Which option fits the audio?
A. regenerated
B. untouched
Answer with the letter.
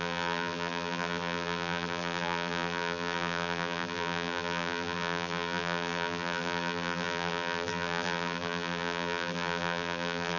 A